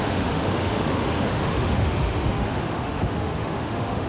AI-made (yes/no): yes